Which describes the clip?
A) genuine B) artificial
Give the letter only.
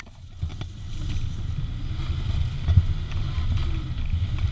A